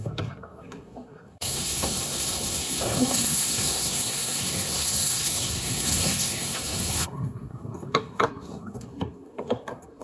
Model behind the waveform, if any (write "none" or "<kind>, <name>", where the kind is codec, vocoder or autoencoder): codec, SNAC